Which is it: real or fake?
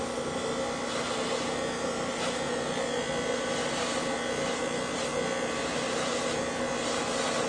real